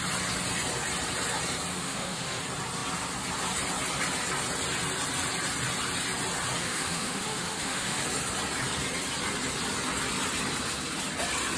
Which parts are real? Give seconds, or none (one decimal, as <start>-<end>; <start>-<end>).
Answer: 0.0-1.7; 2.4-6.6; 8.0-11.6